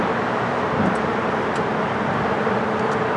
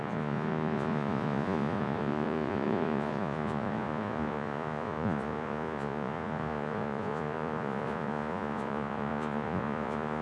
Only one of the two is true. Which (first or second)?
first